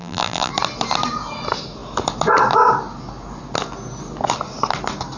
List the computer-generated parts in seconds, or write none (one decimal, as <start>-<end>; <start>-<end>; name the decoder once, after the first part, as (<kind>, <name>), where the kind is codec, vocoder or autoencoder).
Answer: 0.0-0.5 (vocoder, BigVGAN v2)